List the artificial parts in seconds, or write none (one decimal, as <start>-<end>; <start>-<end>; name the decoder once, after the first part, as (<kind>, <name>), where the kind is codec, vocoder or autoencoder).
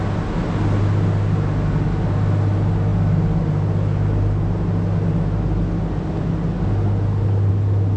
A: none